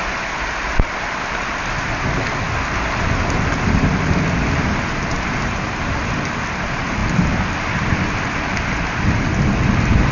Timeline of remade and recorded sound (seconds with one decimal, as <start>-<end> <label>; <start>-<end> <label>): 0.0-10.1 recorded